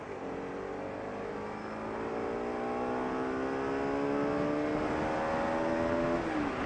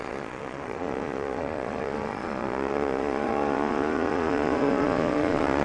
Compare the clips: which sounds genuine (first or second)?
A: first